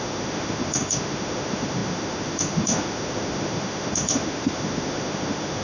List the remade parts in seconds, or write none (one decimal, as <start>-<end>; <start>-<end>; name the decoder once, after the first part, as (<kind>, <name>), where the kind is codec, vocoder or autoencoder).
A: 0.0-5.6 (autoencoder, DAC-VAE)